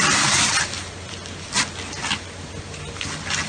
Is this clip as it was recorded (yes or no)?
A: yes